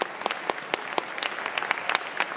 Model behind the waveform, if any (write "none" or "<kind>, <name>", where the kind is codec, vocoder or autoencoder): none